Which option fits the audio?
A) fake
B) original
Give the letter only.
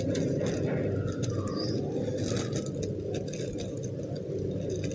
B